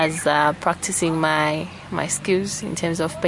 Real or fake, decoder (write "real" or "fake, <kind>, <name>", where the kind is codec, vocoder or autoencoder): real